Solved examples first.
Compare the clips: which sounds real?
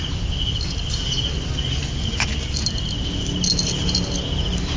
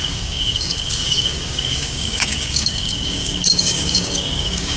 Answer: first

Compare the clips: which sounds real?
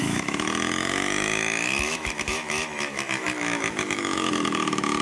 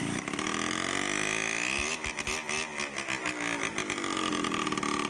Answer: second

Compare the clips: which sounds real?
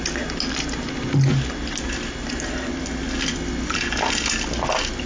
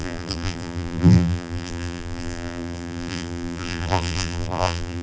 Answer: first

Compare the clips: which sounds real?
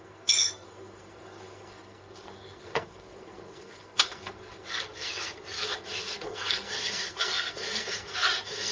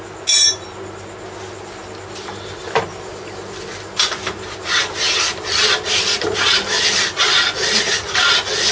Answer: second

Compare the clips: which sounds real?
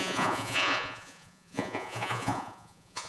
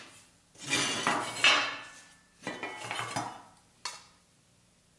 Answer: second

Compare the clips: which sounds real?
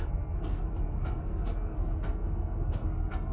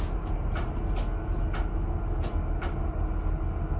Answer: second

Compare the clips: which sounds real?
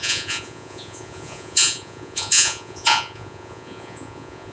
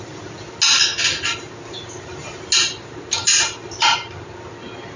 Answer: second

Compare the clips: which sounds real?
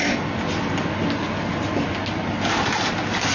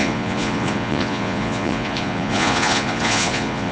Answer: first